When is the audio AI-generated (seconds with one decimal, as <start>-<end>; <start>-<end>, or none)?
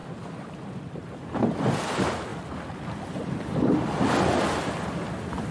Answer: none